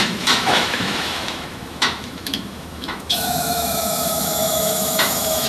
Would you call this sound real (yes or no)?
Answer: no